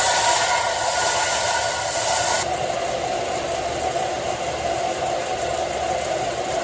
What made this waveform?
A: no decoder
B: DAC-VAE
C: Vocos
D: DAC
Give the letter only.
A